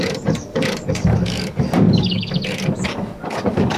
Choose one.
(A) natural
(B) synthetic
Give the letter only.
B